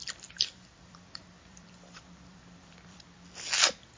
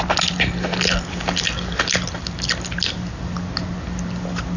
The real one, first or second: second